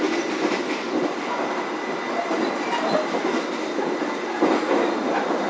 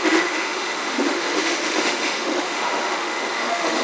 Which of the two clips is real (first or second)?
first